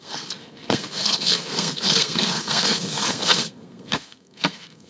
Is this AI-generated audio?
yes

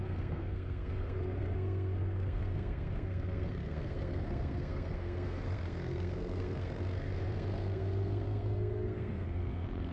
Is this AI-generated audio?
yes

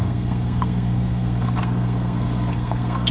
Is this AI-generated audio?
yes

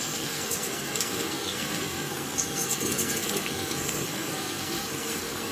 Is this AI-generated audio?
yes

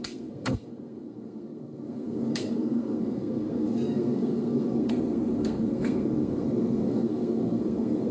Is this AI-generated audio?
yes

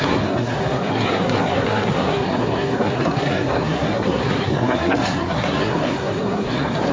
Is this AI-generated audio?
yes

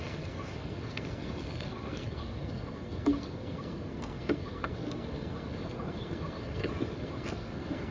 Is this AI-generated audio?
yes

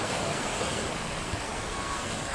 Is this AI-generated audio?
yes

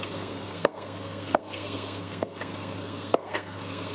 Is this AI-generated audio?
yes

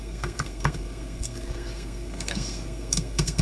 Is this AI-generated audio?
yes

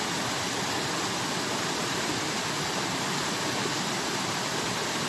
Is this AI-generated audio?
no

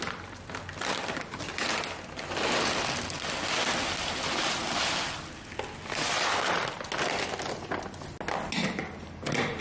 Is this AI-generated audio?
no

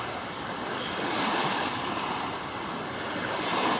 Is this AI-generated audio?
no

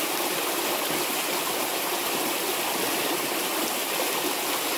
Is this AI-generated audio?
no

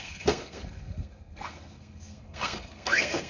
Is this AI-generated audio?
yes